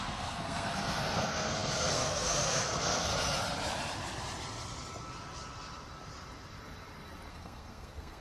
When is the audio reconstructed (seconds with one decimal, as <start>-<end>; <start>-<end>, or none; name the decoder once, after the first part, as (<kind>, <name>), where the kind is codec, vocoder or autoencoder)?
0.0-3.1 (codec, SNAC); 7.3-8.2